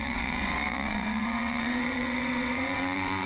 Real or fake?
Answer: fake